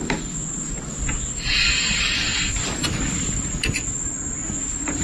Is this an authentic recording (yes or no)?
yes